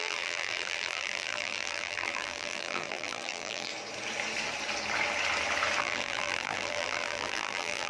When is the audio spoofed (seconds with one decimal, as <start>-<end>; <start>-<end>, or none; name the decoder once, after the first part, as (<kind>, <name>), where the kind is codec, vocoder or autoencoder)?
0.0-3.7 (vocoder, BigVGAN v2); 5.8-7.9